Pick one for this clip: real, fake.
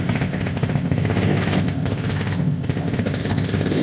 fake